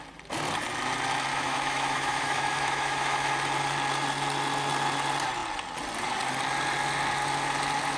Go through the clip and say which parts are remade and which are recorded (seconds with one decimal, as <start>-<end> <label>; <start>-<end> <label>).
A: 0.0-1.3 recorded; 1.3-3.3 remade; 3.3-8.0 recorded